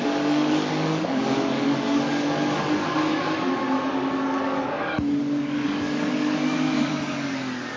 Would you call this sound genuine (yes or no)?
no